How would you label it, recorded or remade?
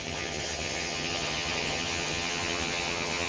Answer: remade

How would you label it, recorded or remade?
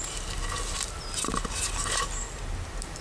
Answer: recorded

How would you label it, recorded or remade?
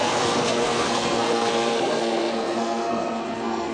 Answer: remade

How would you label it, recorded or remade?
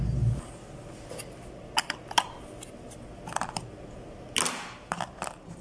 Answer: recorded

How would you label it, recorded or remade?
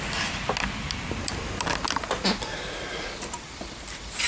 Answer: recorded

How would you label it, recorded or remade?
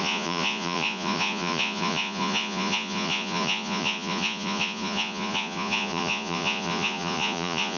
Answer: remade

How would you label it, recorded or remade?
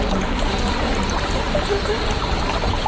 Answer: recorded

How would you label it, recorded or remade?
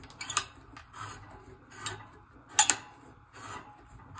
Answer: recorded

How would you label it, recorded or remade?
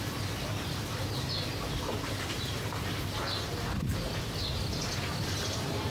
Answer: recorded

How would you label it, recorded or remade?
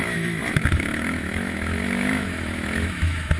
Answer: remade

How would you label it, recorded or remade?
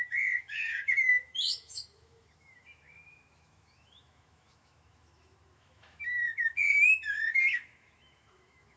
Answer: remade